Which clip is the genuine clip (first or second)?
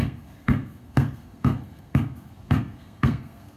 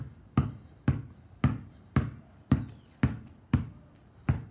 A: second